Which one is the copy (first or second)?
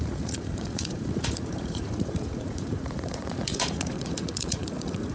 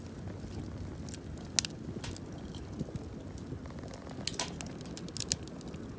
first